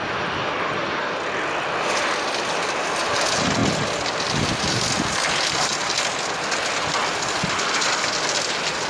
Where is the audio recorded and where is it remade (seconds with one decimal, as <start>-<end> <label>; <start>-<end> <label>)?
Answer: 0.0-8.9 recorded